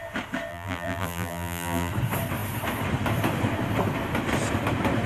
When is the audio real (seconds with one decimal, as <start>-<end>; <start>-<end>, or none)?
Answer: 0.0-0.5; 1.9-5.1